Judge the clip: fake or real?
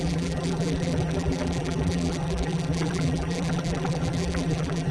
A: fake